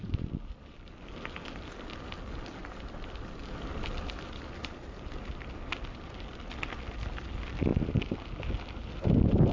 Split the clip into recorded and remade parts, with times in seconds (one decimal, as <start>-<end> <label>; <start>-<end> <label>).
0.0-2.6 recorded; 2.6-6.5 remade; 6.5-9.5 recorded